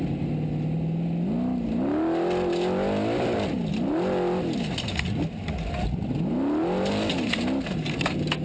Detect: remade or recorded recorded